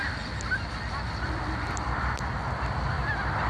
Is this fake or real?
fake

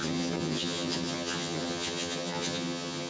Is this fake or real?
fake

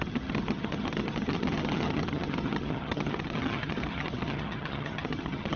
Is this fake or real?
fake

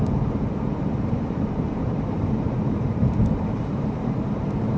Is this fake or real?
fake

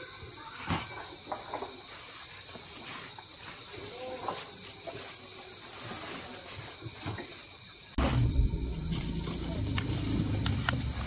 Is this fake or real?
real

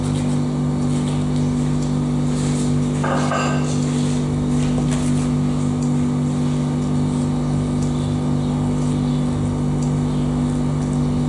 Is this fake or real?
real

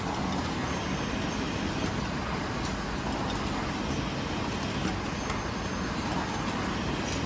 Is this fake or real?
real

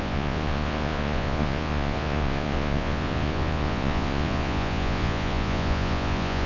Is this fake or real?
fake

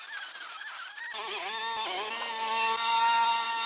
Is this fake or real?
real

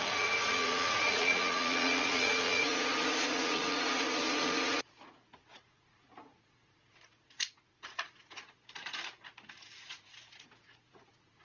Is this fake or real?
fake